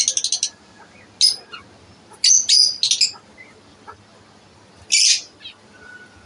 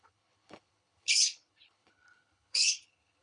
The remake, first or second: second